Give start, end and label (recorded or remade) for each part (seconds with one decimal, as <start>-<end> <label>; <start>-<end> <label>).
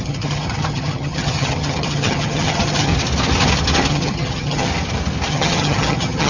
0.0-2.9 remade; 2.9-3.9 recorded; 3.9-4.7 remade; 4.7-5.3 recorded; 5.3-6.3 remade